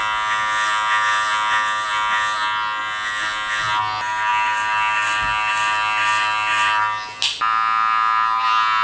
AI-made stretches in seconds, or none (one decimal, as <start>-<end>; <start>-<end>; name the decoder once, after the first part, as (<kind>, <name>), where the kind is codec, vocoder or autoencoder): none